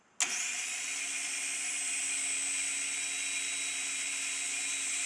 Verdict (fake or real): real